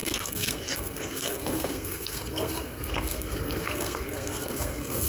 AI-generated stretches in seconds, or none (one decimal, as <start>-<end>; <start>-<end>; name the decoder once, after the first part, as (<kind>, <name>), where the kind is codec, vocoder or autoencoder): 0.0-5.1 (codec, SNAC)